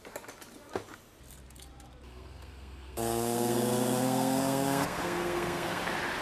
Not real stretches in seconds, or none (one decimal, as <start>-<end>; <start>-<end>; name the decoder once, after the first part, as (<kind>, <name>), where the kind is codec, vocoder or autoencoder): 2.1-5.8 (codec, SNAC)